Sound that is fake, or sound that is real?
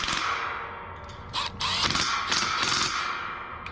real